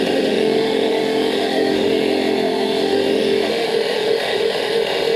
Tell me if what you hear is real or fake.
fake